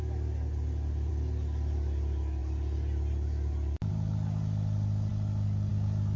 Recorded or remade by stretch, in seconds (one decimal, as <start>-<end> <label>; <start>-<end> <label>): 0.0-6.2 recorded